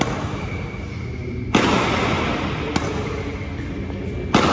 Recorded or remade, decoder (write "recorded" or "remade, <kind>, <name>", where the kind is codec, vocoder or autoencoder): recorded